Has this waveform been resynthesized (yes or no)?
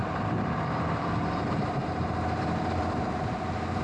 yes